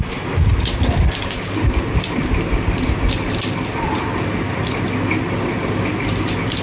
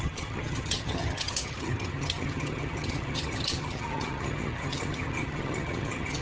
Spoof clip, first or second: second